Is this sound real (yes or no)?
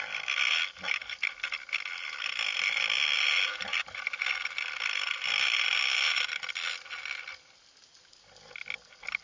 yes